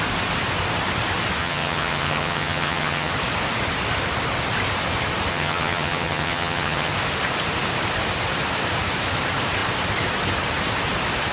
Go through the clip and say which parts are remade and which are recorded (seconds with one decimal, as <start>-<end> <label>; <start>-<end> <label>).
0.0-1.4 recorded; 1.4-3.1 remade; 3.1-5.3 recorded; 5.3-6.9 remade; 6.9-11.3 recorded